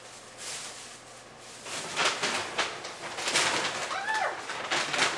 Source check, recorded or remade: recorded